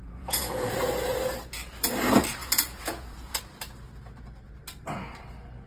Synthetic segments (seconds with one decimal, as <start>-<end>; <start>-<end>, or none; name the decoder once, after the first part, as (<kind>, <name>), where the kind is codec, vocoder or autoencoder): 0.0-0.9 (vocoder, Vocos); 2.4-3.4